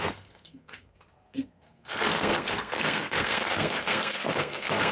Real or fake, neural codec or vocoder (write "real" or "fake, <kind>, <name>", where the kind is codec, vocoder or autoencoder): fake, codec, SNAC